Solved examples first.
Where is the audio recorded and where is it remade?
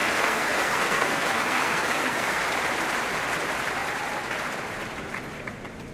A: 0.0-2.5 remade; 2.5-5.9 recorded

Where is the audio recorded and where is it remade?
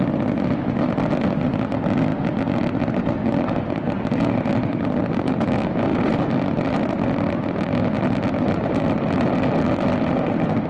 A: 0.0-10.7 recorded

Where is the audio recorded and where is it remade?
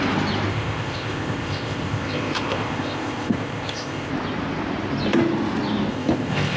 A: 0.0-0.5 recorded; 0.5-4.1 remade; 4.1-5.9 recorded; 5.9-6.6 remade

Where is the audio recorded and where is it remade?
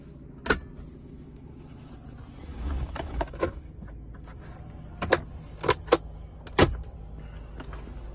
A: 0.0-1.0 recorded; 1.0-1.9 remade; 1.9-2.5 recorded; 2.5-3.7 remade; 3.7-8.1 recorded